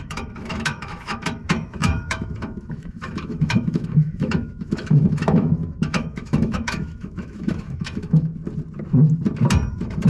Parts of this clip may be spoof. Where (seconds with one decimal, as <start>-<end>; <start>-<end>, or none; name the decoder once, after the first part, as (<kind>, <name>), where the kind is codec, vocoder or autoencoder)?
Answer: 0.0-8.3 (autoencoder, DAC-VAE); 9.7-10.1